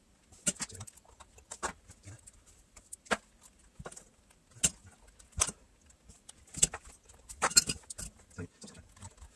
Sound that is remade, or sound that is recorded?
recorded